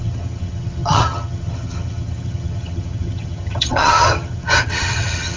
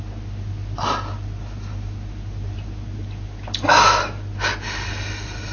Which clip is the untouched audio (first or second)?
second